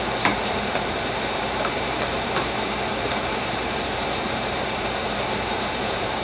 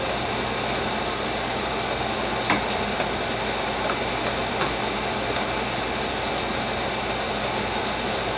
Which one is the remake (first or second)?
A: first